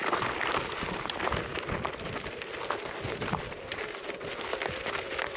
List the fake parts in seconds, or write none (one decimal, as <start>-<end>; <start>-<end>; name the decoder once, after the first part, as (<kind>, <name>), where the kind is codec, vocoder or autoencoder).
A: none